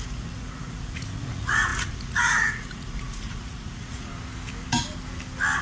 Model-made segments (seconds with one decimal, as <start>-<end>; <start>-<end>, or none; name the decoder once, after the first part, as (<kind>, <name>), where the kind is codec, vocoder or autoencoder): 0.0-4.1 (vocoder, Vocos)